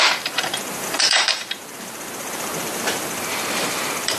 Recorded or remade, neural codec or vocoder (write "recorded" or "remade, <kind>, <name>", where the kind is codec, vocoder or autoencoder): remade, vocoder, BigVGAN v2